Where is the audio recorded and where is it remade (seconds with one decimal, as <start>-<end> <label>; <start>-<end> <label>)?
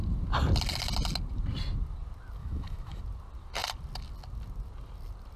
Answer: 0.0-2.4 recorded; 2.4-3.0 remade; 3.0-5.4 recorded